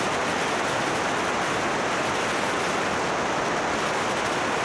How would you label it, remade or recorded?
recorded